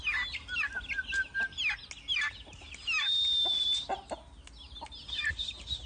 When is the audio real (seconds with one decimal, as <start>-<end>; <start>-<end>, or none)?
0.0-5.9

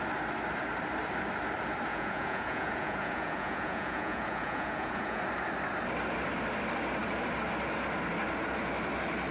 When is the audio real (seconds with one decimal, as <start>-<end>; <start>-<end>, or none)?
0.0-1.9; 5.2-9.3